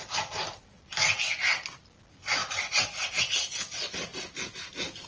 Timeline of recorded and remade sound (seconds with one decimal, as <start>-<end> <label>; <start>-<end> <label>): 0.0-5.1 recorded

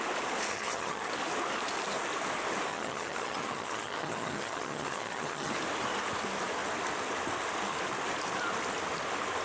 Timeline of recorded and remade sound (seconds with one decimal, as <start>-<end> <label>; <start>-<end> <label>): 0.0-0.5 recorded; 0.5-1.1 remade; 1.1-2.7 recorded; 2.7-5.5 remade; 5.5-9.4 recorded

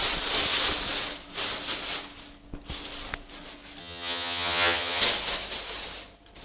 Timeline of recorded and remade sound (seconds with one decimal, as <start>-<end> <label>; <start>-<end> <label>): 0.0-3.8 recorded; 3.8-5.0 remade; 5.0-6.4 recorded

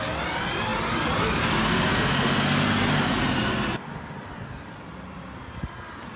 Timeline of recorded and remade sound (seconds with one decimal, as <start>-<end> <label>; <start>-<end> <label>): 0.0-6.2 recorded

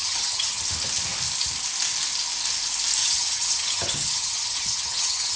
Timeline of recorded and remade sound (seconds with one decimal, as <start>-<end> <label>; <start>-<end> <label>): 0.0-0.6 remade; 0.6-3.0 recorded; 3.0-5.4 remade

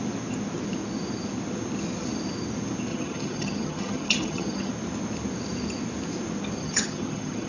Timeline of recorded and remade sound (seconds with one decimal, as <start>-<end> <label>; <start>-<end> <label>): 0.0-2.9 recorded; 2.9-4.7 remade; 4.7-6.6 recorded; 6.6-7.5 remade